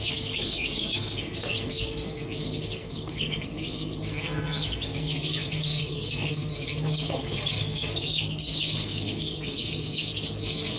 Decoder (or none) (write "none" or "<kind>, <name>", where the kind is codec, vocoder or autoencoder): codec, SNAC